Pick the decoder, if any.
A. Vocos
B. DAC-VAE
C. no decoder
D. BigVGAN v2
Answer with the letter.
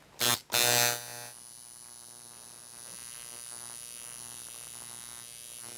C